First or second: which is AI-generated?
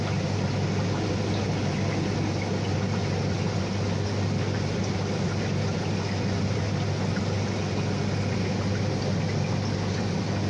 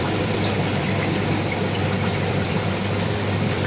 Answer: second